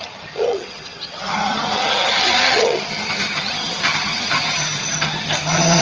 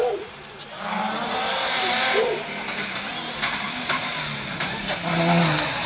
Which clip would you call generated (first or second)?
first